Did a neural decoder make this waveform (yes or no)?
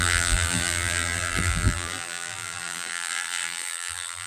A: yes